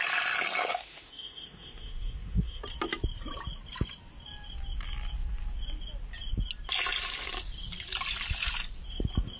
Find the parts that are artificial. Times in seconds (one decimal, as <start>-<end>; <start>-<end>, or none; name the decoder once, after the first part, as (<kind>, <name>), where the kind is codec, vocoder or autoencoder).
0.7-2.6 (autoencoder, DAC-VAE)

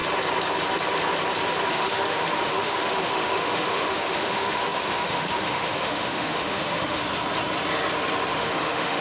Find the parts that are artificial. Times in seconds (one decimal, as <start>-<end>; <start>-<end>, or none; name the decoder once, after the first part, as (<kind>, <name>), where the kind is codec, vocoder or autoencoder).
1.7-7.0 (autoencoder, DAC-VAE); 8.3-9.0

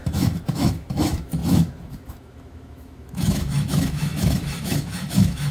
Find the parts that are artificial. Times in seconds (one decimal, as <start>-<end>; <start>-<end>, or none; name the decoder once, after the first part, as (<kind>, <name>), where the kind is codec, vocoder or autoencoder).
0.0-5.5 (autoencoder, DAC-VAE)